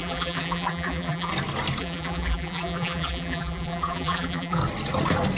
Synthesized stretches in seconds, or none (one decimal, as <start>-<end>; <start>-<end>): 0.0-1.3; 1.8-4.6